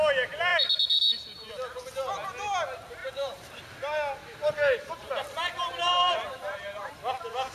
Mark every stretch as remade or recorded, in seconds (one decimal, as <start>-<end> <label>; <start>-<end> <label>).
0.0-3.0 recorded; 3.0-3.6 remade; 3.6-4.2 recorded; 4.2-6.9 remade; 6.9-7.5 recorded